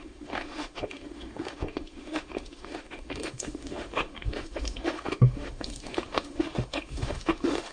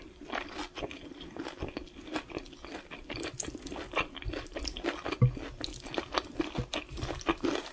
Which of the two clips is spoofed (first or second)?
first